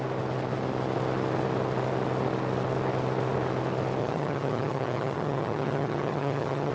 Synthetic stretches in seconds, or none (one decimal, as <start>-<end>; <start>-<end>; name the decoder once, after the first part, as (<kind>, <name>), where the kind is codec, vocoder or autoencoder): 4.0-6.7 (vocoder, HiFi-GAN)